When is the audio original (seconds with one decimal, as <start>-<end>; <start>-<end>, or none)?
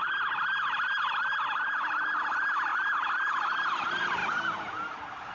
0.0-5.3